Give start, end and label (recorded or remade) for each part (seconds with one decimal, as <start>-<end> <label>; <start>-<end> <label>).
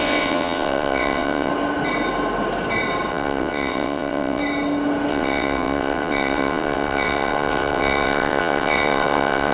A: 0.0-1.5 remade; 1.5-3.1 recorded; 3.1-4.4 remade; 4.4-5.1 recorded; 5.1-9.5 remade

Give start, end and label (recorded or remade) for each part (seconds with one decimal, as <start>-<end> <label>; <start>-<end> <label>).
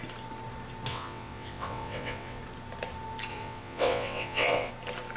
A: 0.0-0.9 recorded; 0.9-2.4 remade; 2.4-3.3 recorded; 3.3-4.7 remade; 4.7-5.2 recorded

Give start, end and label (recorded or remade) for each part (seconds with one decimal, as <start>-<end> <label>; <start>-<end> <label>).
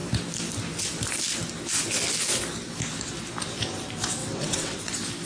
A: 0.0-4.2 recorded; 4.2-4.8 remade; 4.8-5.3 recorded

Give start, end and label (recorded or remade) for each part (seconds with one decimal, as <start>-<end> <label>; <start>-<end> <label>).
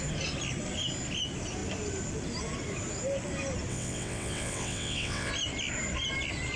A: 0.0-3.7 recorded; 3.7-5.3 remade; 5.3-6.6 recorded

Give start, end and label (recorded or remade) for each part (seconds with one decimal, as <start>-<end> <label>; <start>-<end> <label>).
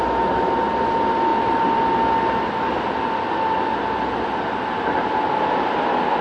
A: 0.0-6.2 recorded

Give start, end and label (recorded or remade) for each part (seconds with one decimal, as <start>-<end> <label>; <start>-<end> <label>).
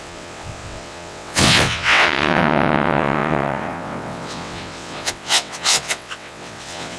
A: 0.0-7.0 remade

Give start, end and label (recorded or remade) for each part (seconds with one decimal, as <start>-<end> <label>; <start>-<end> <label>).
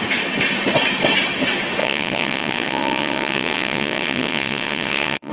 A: 0.0-1.8 recorded; 1.8-5.3 remade